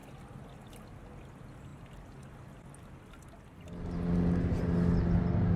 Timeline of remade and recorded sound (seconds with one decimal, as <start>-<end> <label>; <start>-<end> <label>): 0.0-5.6 recorded